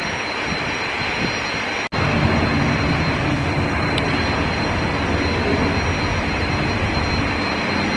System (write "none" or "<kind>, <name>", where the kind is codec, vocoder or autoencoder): none